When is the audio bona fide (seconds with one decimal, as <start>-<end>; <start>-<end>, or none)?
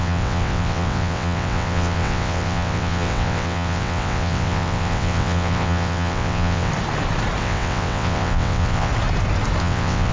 6.7-7.4; 8.9-9.6